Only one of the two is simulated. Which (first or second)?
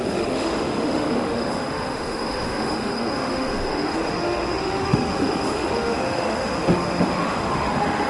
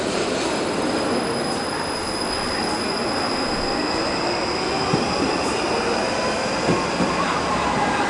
first